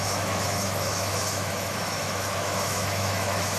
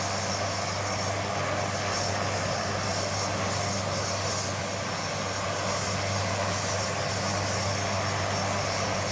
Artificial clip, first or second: first